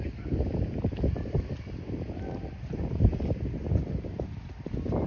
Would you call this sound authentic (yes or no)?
yes